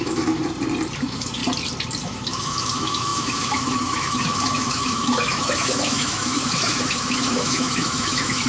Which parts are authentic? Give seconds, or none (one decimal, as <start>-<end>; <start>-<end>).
0.4-1.0; 1.4-2.0